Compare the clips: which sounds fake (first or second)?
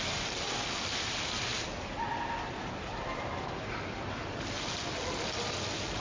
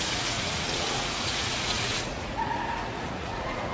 second